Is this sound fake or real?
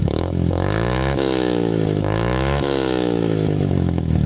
fake